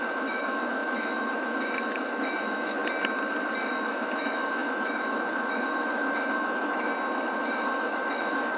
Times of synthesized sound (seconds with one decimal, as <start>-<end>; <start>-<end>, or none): 0.0-2.8; 3.6-6.9; 7.4-8.6